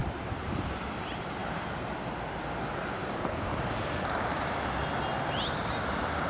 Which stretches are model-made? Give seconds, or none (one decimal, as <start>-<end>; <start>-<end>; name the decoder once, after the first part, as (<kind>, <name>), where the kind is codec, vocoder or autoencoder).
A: 0.0-0.9 (vocoder, BigVGAN v2); 1.4-2.0; 3.0-4.5